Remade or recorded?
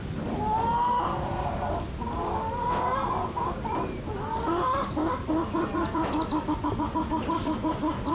recorded